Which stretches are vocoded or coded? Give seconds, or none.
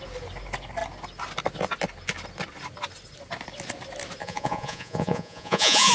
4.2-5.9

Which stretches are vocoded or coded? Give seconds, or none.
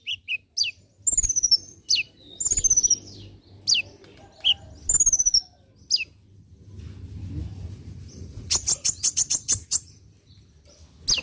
7.5-9.9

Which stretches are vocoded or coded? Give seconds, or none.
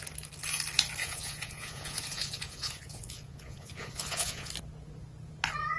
1.0-4.5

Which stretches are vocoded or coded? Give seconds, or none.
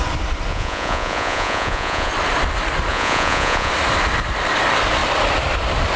0.5-2.1; 2.9-3.7